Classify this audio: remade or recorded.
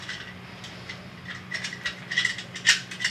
recorded